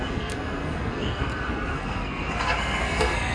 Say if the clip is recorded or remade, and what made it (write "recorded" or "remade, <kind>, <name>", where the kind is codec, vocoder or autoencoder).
remade, codec, SNAC